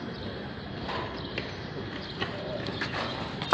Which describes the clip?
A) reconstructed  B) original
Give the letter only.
B